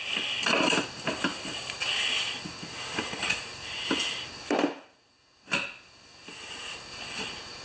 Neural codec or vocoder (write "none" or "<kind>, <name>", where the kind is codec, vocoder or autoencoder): none